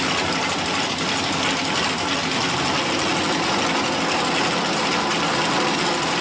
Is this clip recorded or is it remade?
recorded